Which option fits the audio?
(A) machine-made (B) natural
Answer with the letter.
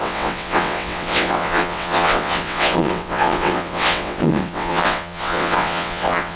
A